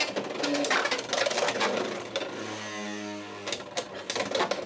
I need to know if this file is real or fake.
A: real